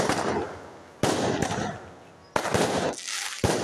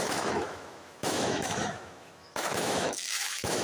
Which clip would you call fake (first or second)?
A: second